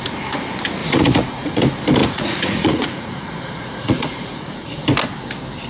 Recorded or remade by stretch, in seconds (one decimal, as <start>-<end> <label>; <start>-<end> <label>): 0.0-0.8 recorded; 0.8-1.6 remade; 1.6-2.0 recorded; 2.0-4.8 remade; 4.8-5.7 recorded